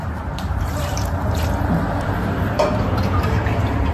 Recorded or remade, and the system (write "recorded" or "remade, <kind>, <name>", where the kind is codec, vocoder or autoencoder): remade, vocoder, BigVGAN v2